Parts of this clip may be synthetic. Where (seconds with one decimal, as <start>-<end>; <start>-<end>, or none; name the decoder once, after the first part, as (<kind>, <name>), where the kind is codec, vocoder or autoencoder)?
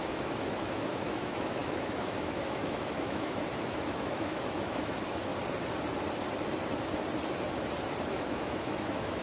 0.0-5.3 (autoencoder, DAC-VAE); 8.0-9.2